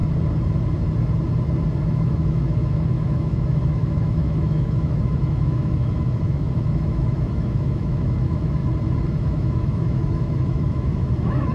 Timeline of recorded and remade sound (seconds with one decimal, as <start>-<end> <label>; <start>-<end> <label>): 0.0-1.8 recorded; 1.8-8.6 remade; 8.6-9.2 recorded; 9.2-11.5 remade